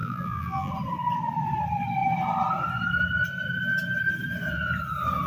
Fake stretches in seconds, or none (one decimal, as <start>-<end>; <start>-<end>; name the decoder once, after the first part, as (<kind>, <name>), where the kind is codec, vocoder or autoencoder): 0.0-0.7 (vocoder, BigVGAN v2)